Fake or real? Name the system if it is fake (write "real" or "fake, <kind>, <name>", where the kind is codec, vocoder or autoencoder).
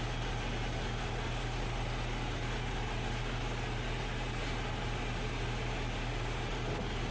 real